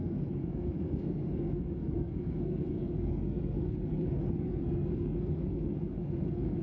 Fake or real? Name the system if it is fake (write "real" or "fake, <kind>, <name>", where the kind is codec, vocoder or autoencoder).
fake, codec, SNAC